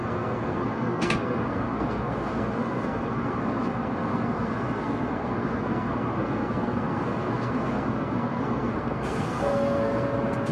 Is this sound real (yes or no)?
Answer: no